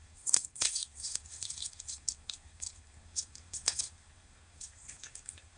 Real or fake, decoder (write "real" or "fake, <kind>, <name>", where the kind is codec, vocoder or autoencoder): fake, codec, SNAC